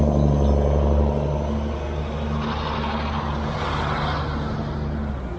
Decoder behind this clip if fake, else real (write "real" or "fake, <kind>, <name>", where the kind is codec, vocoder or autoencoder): real